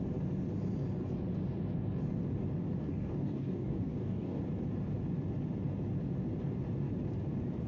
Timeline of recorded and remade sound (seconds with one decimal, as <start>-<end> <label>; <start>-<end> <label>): 0.0-2.8 recorded; 2.8-4.4 remade; 4.4-7.7 recorded